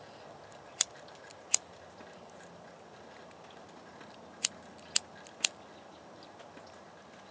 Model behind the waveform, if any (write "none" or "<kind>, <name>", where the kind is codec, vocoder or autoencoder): none